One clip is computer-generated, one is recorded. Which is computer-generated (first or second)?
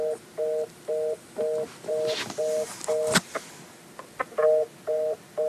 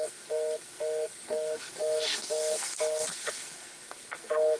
second